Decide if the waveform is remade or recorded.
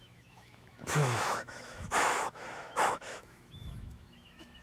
remade